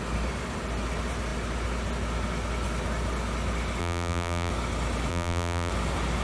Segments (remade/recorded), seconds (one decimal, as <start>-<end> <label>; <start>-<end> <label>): 0.0-3.8 recorded; 3.8-4.5 remade; 4.5-5.1 recorded; 5.1-5.7 remade; 5.7-6.2 recorded